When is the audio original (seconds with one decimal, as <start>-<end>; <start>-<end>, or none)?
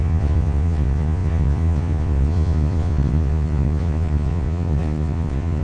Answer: none